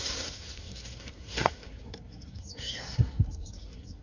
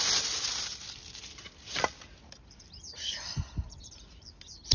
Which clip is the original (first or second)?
second